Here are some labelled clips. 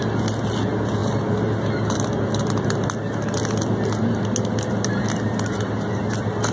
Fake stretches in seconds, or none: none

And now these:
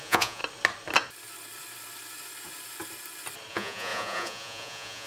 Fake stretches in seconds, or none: 0.0-0.4 (vocoder, Vocos); 3.5-5.1